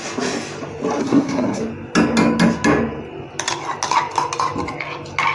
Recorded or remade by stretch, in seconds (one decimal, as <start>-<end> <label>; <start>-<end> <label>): 0.0-1.0 recorded; 1.0-1.6 remade; 1.6-5.3 recorded